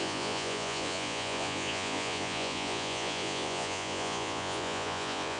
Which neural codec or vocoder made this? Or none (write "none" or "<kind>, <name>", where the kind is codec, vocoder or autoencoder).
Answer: vocoder, Vocos